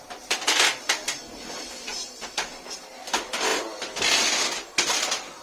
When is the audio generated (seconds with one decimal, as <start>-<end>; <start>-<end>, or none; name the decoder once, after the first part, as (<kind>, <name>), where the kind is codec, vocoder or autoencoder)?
3.5-5.0 (vocoder, BigVGAN v2)